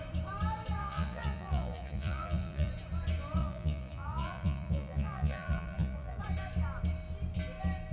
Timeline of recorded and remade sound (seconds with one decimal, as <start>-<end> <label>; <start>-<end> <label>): 0.0-0.8 recorded; 0.8-2.7 remade; 2.7-3.4 recorded; 3.4-6.2 remade; 6.2-7.9 recorded